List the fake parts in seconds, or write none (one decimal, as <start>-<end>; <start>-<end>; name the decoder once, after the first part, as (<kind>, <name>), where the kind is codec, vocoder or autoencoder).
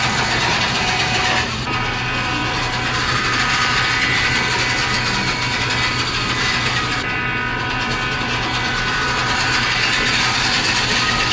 0.5-1.2 (vocoder, BigVGAN v2)